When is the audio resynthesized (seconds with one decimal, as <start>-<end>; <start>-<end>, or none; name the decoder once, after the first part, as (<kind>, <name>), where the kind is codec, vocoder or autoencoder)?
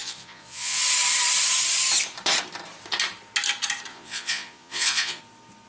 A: 0.0-0.8 (vocoder, Vocos); 3.9-5.2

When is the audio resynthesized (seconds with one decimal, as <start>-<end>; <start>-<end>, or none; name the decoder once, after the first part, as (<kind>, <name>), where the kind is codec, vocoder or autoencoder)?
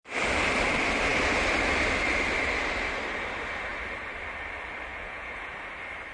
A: 4.9-5.5 (vocoder, Vocos)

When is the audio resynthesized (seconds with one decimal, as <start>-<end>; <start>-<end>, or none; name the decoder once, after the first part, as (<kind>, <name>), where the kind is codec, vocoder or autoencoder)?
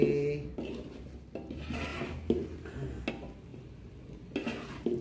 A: none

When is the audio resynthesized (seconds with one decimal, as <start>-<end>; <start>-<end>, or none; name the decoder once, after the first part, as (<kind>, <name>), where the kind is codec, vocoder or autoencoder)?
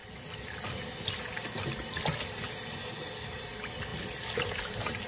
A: none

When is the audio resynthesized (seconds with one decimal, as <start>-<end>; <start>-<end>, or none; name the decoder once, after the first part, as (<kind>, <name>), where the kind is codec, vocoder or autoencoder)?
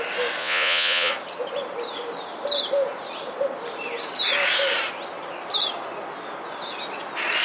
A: 0.4-1.1 (vocoder, Vocos)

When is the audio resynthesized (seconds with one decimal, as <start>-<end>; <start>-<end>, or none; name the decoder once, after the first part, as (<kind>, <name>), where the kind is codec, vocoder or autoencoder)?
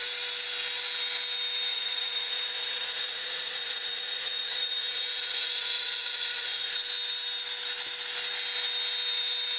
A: 1.7-6.7 (vocoder, Vocos)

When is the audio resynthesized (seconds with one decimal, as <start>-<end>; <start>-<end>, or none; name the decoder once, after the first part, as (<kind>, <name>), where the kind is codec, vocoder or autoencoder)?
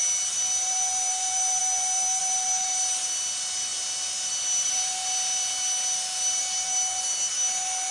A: none